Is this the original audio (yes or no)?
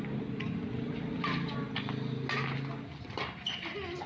yes